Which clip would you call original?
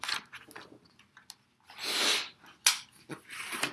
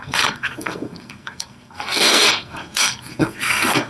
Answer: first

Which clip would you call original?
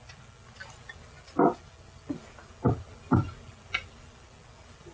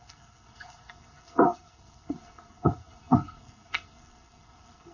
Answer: first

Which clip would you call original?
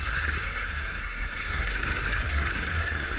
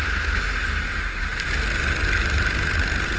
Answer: second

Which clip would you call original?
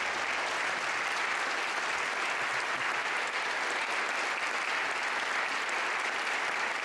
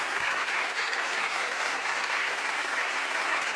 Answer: first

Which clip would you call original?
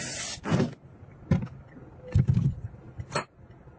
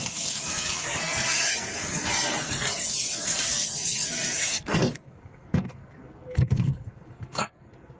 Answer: first